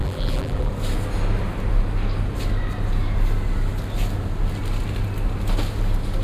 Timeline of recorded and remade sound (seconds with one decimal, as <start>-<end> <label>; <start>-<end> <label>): 0.0-0.7 remade; 0.7-6.2 recorded